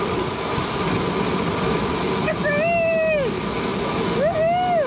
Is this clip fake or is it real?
real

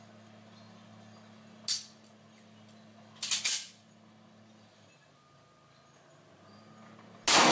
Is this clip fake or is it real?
real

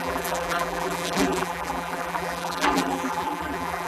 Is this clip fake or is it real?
fake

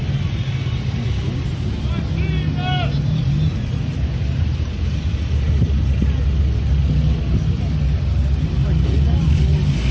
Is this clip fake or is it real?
real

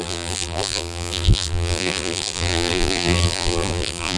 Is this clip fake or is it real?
fake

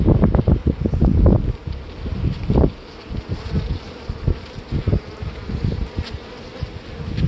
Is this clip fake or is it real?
real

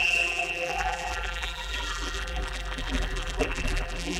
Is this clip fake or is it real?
fake